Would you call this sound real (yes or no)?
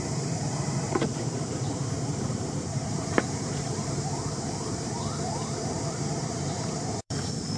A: no